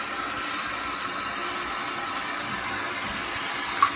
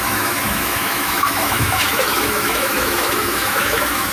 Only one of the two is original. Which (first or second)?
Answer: first